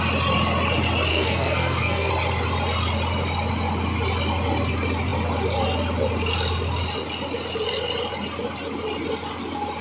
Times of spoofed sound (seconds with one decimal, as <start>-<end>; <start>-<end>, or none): 1.1-2.1